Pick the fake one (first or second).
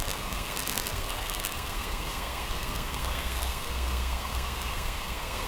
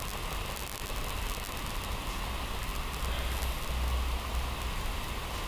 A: first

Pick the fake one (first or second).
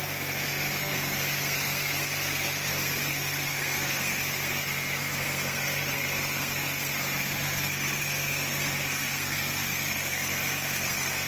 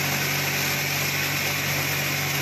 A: first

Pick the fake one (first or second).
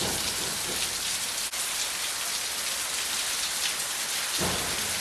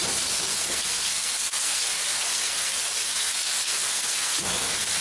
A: second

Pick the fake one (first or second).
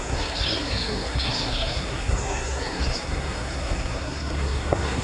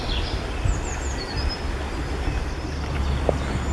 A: first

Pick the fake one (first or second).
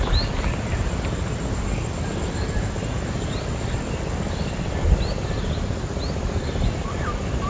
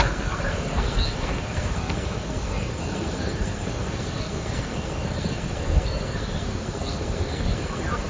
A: second